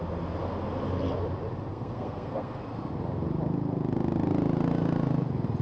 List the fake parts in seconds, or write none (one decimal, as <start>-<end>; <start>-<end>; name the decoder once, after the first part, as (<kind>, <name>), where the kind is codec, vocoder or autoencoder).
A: 1.7-2.6 (codec, SNAC)